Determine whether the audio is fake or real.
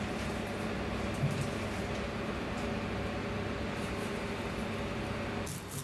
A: real